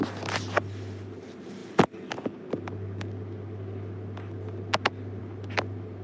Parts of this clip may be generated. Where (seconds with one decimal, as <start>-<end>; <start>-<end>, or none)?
none